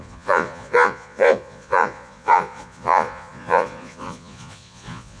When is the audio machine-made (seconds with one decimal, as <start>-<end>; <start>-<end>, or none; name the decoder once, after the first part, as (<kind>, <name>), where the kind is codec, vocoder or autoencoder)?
0.0-5.2 (vocoder, Vocos)